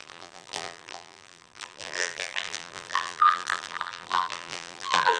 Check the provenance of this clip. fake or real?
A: fake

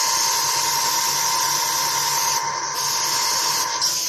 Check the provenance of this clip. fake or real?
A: real